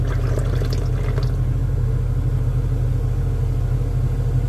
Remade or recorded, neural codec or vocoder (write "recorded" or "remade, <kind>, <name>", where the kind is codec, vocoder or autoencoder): recorded